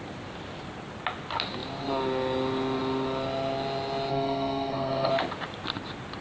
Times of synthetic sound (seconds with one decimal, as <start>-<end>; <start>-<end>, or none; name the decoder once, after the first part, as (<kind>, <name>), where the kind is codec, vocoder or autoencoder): 4.1-5.1 (codec, SNAC)